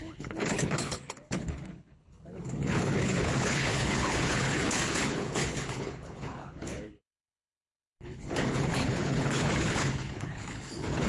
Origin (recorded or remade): remade